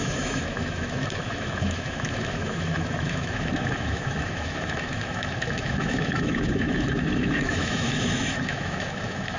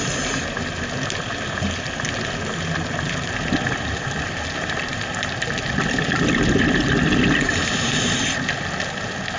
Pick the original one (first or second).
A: second